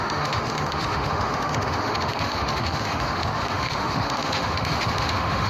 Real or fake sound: fake